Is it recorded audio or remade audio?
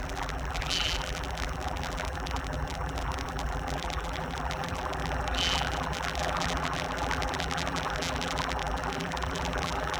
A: remade